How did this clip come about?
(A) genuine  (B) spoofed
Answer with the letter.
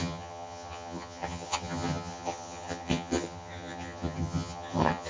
B